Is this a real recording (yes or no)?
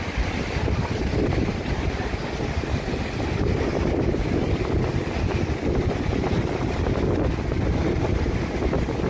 yes